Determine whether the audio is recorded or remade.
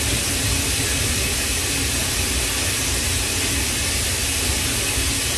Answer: recorded